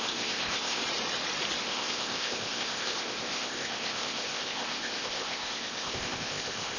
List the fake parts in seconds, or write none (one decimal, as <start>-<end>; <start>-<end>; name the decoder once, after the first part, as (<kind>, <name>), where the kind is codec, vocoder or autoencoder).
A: 0.0-0.8 (codec, ZipCodec); 1.6-6.8